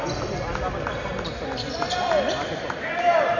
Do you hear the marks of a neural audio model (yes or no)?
no